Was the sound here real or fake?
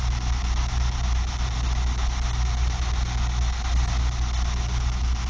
real